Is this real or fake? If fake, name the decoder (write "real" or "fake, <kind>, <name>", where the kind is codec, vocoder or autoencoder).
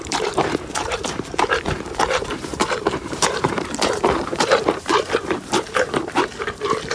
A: fake, vocoder, BigVGAN v2